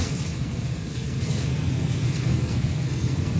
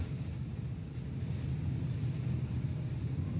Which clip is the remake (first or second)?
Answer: first